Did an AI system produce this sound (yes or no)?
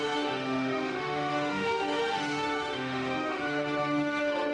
yes